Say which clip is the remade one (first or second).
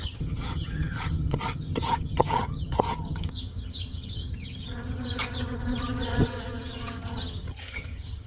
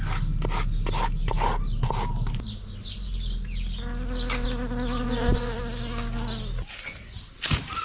first